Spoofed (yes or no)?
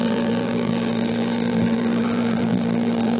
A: yes